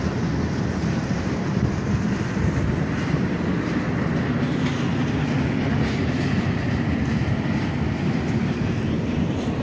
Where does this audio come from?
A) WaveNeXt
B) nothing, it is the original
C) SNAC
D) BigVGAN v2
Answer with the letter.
D